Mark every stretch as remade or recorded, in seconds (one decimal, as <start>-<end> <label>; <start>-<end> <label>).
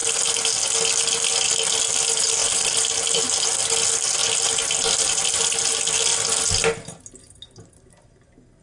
0.0-2.4 recorded; 2.4-3.5 remade; 3.5-8.6 recorded